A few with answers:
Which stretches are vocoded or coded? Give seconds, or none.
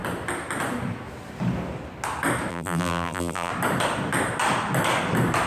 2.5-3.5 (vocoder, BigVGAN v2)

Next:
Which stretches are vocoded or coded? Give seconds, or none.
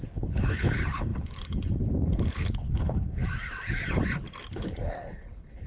0.0-3.2 (codec, HILCodec); 4.5-5.7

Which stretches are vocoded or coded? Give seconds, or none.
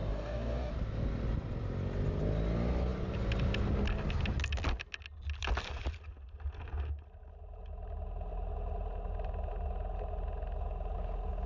0.0-0.7 (codec, DAC)